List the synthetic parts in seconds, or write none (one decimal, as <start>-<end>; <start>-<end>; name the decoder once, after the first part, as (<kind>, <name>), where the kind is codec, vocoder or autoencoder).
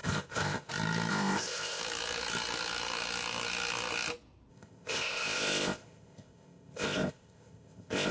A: 0.0-0.7 (codec, ZipCodec); 1.1-1.8; 4.5-8.1